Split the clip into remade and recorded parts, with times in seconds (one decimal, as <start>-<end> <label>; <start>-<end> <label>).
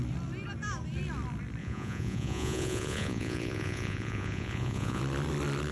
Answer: 0.0-1.6 recorded; 1.6-5.0 remade; 5.0-5.7 recorded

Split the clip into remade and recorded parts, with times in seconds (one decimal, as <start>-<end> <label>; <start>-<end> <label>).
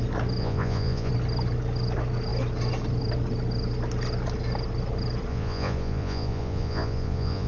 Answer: 0.0-0.4 recorded; 0.4-1.1 remade; 1.1-5.3 recorded; 5.3-7.5 remade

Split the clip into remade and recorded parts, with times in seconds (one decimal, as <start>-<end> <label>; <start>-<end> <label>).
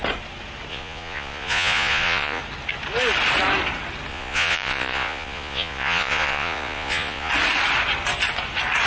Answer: 0.0-0.7 recorded; 0.7-2.4 remade; 2.4-4.1 recorded; 4.1-7.3 remade; 7.3-8.9 recorded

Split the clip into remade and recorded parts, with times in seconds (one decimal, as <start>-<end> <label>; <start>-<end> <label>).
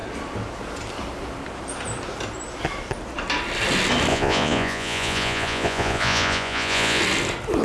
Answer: 0.0-4.1 recorded; 4.1-7.0 remade; 7.0-7.6 recorded